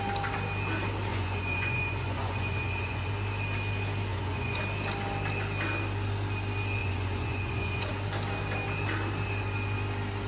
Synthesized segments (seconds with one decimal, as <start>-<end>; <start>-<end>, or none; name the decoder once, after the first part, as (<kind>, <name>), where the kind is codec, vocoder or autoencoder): 1.1-3.1 (vocoder, Vocos); 4.1-4.6; 6.8-7.9